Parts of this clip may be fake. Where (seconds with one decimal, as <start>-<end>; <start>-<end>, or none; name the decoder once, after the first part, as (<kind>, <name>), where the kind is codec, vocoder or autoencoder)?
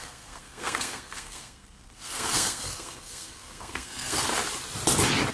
0.0-4.3 (codec, SNAC)